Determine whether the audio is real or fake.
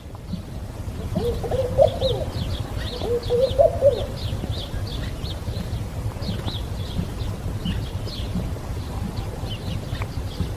real